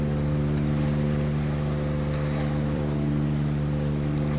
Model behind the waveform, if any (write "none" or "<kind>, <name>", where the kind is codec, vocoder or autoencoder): vocoder, BigVGAN v2